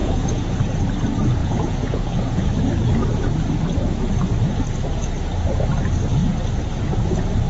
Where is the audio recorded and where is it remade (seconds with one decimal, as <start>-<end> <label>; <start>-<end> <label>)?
0.0-0.6 remade; 0.6-1.4 recorded; 1.4-2.4 remade; 2.4-7.5 recorded